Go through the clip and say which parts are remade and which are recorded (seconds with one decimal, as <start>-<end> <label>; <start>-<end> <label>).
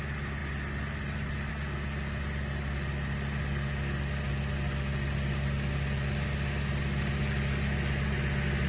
0.0-8.7 recorded